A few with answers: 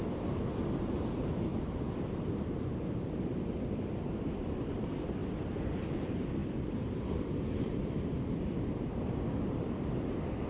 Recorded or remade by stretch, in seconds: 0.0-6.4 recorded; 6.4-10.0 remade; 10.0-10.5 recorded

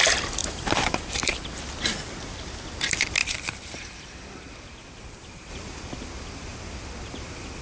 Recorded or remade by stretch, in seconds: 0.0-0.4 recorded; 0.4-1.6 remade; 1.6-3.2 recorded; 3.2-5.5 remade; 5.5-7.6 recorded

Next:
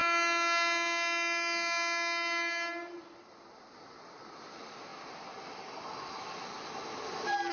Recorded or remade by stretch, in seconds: 0.0-7.5 recorded

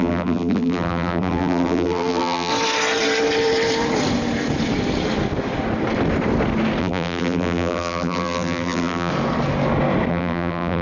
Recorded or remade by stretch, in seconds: 0.0-2.5 remade; 2.5-6.8 recorded; 6.8-9.1 remade; 9.1-10.1 recorded; 10.1-10.8 remade